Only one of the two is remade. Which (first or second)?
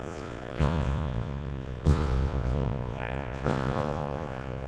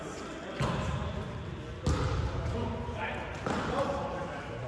first